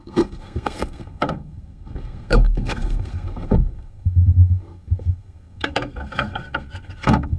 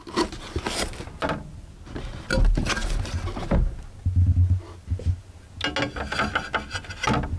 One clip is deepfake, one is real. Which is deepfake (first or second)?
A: first